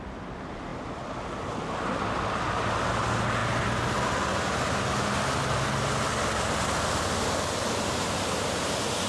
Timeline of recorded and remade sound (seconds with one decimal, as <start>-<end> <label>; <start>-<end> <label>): 0.0-9.1 recorded